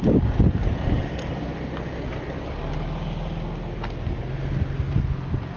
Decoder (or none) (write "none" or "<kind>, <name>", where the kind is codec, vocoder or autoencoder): none